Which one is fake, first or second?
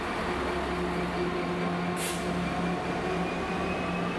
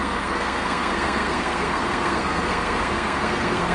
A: second